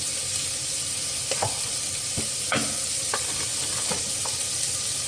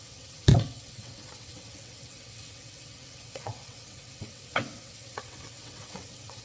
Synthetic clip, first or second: second